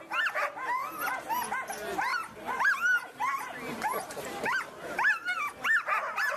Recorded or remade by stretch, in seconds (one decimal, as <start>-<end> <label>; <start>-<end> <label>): 0.0-2.1 recorded; 2.1-4.6 remade; 4.6-6.4 recorded

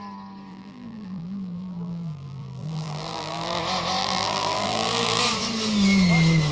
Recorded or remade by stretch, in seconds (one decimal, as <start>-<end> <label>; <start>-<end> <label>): 0.0-0.5 recorded; 0.5-3.6 remade; 3.6-4.0 recorded; 4.0-5.2 remade; 5.2-6.5 recorded

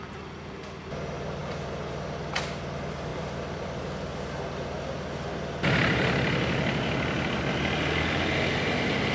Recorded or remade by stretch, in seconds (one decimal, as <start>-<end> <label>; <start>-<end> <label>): 0.0-1.4 recorded; 1.4-2.2 remade; 2.2-3.1 recorded; 3.1-3.8 remade; 3.8-9.1 recorded